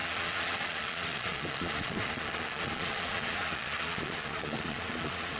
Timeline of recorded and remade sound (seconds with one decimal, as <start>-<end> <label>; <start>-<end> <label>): 0.0-5.4 remade